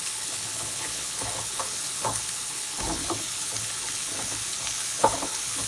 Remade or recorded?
remade